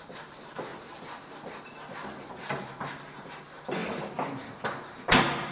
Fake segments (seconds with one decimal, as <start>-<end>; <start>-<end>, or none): 0.0-0.7; 2.6-3.8; 4.8-5.5